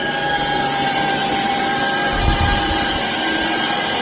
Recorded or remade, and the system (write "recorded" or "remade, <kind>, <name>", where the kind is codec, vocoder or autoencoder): recorded